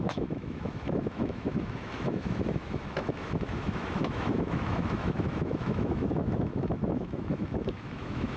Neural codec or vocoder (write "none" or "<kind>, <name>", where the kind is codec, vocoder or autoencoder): autoencoder, DAC-VAE